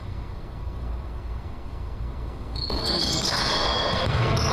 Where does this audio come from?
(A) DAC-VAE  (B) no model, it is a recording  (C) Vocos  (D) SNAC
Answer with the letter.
D